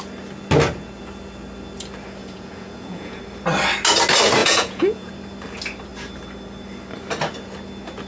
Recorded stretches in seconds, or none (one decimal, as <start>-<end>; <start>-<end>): 0.0-2.2; 3.2-4.4; 5.1-8.1